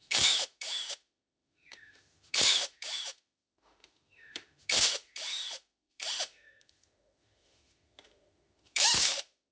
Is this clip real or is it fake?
fake